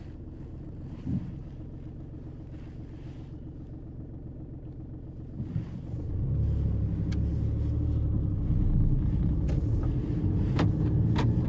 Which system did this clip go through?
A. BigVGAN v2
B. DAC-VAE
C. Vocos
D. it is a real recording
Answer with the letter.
D